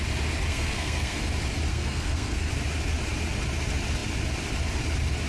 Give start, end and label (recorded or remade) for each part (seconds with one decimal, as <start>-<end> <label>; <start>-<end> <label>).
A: 0.0-0.5 recorded; 0.5-1.2 remade; 1.2-1.7 recorded; 1.7-2.5 remade; 2.5-5.3 recorded